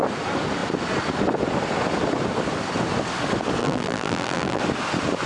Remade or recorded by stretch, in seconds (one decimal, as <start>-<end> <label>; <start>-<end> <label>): 0.0-3.6 recorded; 3.6-4.6 remade; 4.6-5.3 recorded